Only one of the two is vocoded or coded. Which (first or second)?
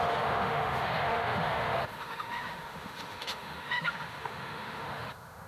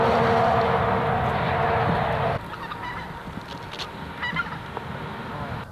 first